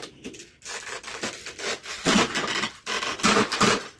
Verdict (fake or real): real